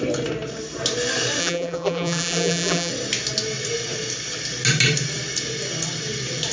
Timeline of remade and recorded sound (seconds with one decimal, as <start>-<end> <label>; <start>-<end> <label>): 0.0-1.4 recorded; 1.4-2.9 remade; 2.9-6.5 recorded